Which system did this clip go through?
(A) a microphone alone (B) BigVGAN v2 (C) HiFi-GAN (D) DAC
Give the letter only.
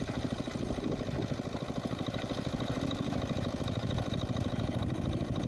A